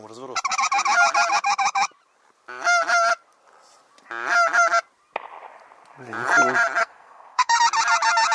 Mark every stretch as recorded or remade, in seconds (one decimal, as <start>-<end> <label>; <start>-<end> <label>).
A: 0.0-6.8 recorded; 6.8-7.6 remade; 7.6-8.3 recorded